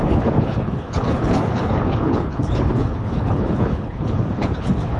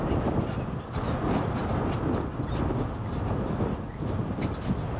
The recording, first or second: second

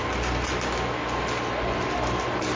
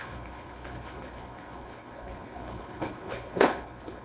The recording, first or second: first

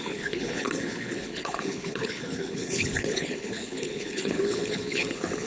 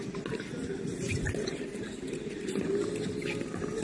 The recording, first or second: second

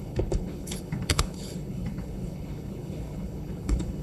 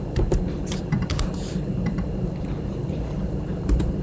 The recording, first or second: second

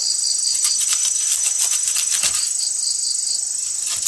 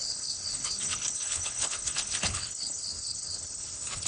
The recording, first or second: first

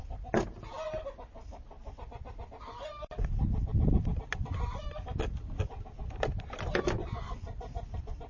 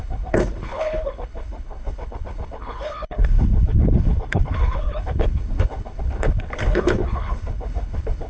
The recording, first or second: first